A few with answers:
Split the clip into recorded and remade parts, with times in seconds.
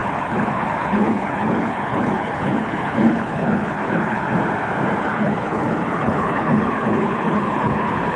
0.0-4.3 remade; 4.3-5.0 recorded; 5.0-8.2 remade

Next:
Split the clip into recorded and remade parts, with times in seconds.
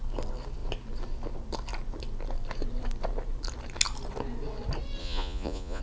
0.0-5.0 recorded; 5.0-5.8 remade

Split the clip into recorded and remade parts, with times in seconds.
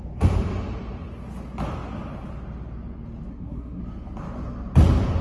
0.0-3.3 recorded; 3.3-3.8 remade; 3.8-5.2 recorded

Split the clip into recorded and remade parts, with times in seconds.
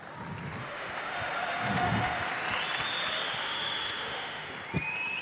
0.0-0.6 recorded; 0.6-2.3 remade; 2.3-3.4 recorded; 3.4-4.5 remade; 4.5-5.2 recorded